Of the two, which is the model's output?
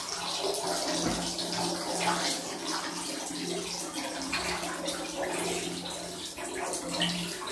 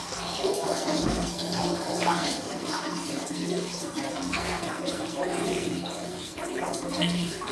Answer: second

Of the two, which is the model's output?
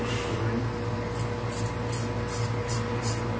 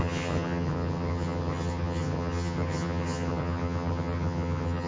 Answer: second